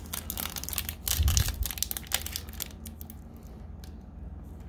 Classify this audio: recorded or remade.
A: recorded